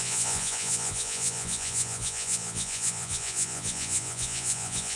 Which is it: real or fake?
fake